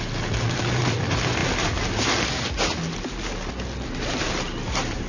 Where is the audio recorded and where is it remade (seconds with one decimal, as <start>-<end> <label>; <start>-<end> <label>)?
0.0-5.1 recorded